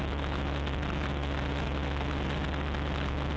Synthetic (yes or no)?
no